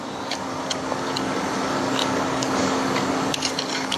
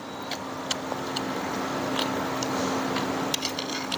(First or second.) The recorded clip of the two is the second